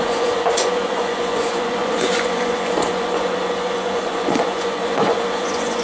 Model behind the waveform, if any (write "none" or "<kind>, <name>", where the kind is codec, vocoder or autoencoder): vocoder, Vocos